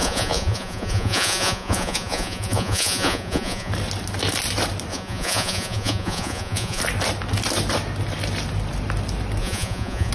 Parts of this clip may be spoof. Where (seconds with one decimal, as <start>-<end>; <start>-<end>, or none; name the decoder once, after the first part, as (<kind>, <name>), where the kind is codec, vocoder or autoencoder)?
0.0-3.7 (vocoder, Vocos); 4.9-6.8; 9.4-10.1